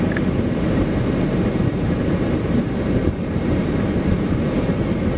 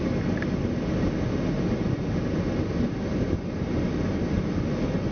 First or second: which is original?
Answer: second